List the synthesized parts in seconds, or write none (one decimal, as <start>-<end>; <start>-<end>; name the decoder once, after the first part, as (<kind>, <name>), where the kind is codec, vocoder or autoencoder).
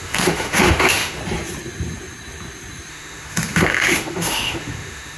0.0-1.2 (autoencoder, DAC-VAE); 2.9-5.2